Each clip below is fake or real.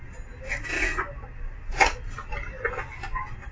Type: real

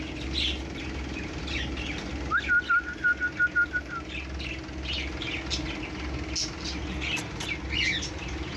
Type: real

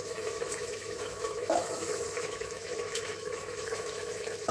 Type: fake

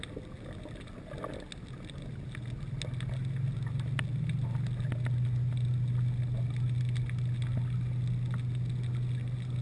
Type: real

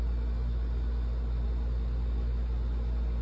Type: real